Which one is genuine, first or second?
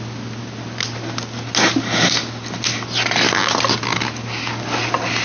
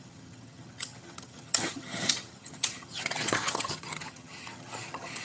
first